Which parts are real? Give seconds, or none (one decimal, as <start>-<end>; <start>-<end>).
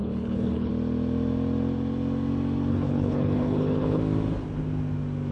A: 0.7-2.7; 4.0-5.3